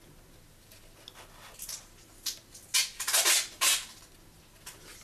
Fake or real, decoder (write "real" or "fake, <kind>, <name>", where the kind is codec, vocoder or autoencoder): real